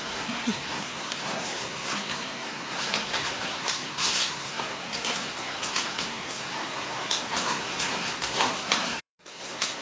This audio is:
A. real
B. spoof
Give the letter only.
B